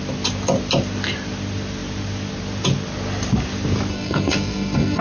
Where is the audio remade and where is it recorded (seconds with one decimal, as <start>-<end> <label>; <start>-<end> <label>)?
0.0-3.9 recorded; 3.9-5.0 remade